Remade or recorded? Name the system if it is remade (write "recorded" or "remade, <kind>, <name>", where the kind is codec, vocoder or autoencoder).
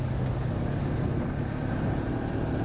recorded